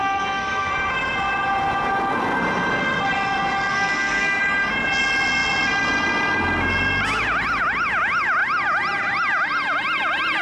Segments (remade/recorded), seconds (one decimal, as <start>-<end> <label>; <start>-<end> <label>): 0.0-0.7 remade; 0.7-3.7 recorded; 3.7-4.4 remade; 4.4-10.4 recorded